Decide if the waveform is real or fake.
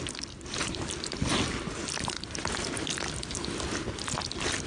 real